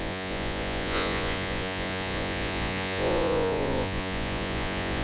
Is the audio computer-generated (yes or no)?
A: yes